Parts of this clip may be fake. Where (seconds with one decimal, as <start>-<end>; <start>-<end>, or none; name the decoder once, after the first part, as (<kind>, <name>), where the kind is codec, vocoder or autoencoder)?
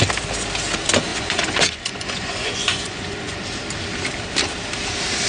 1.1-3.4 (vocoder, Vocos)